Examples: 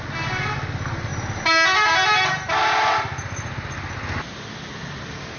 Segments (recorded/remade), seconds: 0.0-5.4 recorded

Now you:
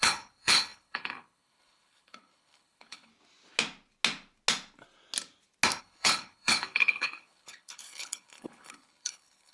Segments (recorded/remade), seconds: 0.0-3.1 remade; 3.1-5.8 recorded; 5.8-9.5 remade

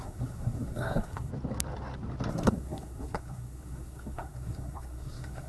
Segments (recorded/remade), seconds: 0.0-1.3 remade; 1.3-2.3 recorded; 2.3-5.5 remade

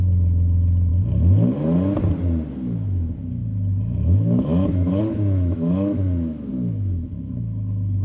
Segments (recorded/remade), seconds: 0.0-0.9 remade; 0.9-2.5 recorded; 2.5-8.0 remade

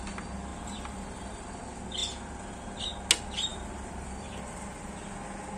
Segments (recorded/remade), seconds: 0.0-0.5 recorded; 0.5-1.5 remade; 1.5-3.5 recorded; 3.5-4.9 remade; 4.9-5.6 recorded